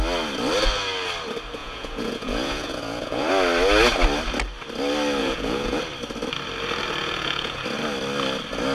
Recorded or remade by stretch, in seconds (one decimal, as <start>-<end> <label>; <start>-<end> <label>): 0.0-1.6 recorded; 1.6-3.3 remade; 3.3-5.2 recorded; 5.2-5.8 remade; 5.8-7.0 recorded; 7.0-7.6 remade; 7.6-8.7 recorded